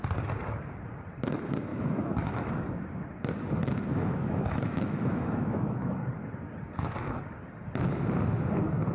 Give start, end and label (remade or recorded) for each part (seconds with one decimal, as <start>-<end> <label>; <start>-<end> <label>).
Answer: 0.0-1.7 recorded; 1.7-2.5 remade; 2.5-3.9 recorded; 3.9-5.9 remade; 5.9-8.9 recorded